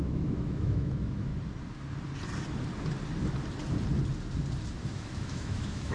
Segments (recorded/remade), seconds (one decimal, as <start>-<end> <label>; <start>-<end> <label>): 0.0-1.3 remade; 1.3-4.8 recorded; 4.8-5.9 remade